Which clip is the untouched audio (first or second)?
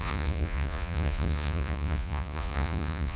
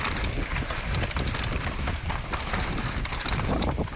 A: second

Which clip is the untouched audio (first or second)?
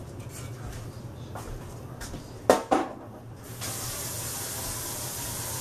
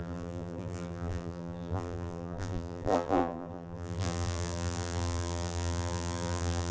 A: first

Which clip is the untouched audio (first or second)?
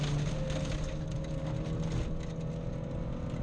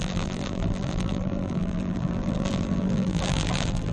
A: first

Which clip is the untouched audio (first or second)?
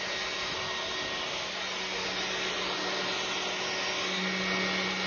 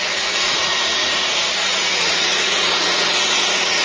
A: first